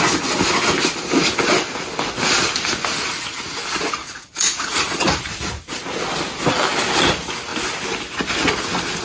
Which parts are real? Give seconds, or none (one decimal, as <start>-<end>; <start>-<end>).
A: 0.0-4.0; 5.2-9.0